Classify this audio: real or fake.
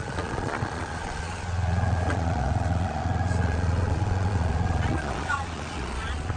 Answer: fake